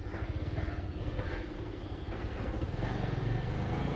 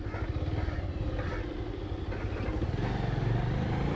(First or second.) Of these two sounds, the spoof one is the first